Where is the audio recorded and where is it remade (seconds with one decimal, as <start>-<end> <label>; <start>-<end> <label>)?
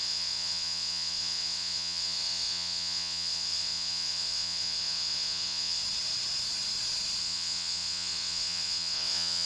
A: 0.0-5.8 remade; 5.8-7.2 recorded; 7.2-9.5 remade